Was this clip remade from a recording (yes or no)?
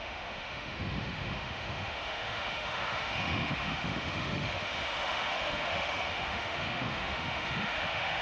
yes